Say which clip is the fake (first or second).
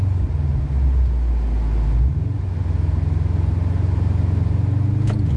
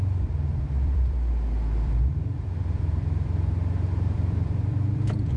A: second